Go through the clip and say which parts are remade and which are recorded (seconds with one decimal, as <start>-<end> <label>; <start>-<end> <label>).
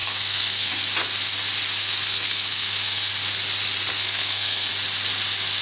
0.0-0.7 remade; 0.7-1.8 recorded; 1.8-3.1 remade; 3.1-3.9 recorded; 3.9-4.7 remade; 4.7-5.6 recorded